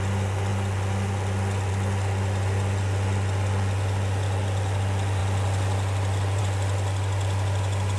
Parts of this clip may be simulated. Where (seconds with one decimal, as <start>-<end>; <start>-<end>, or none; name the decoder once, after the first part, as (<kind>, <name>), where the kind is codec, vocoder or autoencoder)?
none